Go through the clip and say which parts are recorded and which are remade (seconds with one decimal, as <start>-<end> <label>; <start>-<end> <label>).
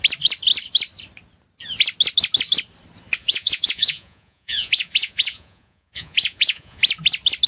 0.0-3.2 recorded; 3.2-6.8 remade; 6.8-7.5 recorded